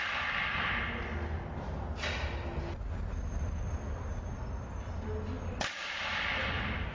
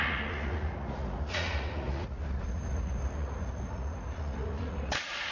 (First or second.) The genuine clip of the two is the first